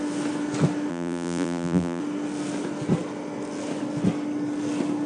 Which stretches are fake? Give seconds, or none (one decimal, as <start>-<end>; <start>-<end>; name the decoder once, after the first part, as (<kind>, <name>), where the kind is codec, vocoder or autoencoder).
0.9-2.0 (vocoder, BigVGAN v2)